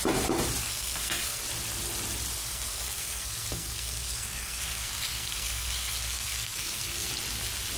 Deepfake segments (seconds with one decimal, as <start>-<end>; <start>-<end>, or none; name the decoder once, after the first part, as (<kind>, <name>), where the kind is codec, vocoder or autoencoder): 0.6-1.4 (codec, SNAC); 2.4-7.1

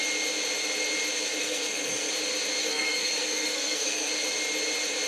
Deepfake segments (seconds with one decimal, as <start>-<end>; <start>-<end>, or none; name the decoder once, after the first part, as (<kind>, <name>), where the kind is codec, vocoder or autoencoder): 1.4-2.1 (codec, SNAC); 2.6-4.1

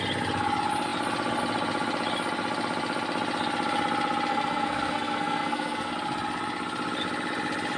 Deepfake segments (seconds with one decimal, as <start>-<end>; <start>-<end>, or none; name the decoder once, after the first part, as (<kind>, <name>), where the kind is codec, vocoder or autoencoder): 4.3-5.9 (codec, SNAC)